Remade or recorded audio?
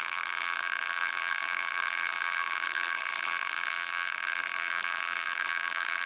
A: remade